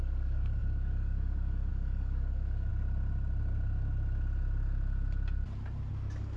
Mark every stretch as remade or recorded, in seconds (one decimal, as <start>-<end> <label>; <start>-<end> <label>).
0.0-2.7 remade; 2.7-5.9 recorded; 5.9-6.4 remade